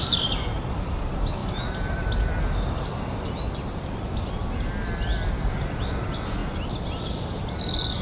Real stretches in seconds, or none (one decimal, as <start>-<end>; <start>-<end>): 0.0-8.0